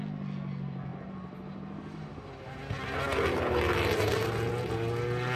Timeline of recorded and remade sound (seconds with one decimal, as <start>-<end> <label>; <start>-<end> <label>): 0.0-5.4 recorded